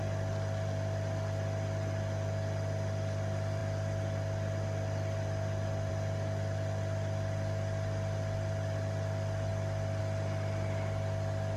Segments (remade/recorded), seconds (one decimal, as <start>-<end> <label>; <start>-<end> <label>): 0.0-11.6 recorded